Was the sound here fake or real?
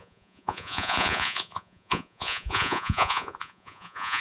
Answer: fake